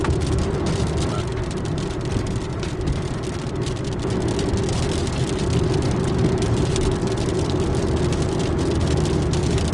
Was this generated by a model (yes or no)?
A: yes